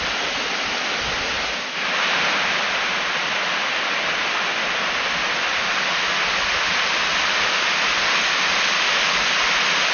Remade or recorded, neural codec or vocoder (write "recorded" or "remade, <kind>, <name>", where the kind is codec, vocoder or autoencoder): recorded